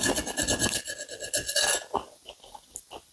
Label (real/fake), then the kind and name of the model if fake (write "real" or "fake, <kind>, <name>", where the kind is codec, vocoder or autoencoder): real